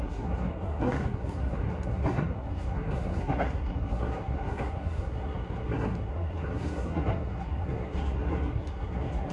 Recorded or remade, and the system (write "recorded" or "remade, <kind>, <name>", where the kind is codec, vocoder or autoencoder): remade, codec, SNAC